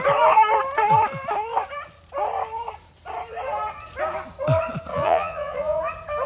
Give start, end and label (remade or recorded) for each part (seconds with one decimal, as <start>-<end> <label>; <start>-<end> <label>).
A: 0.0-4.9 recorded; 4.9-5.8 remade; 5.8-6.3 recorded